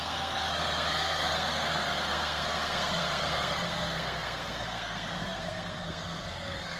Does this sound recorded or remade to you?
remade